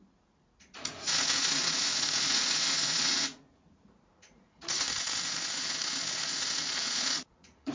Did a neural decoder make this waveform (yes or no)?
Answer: yes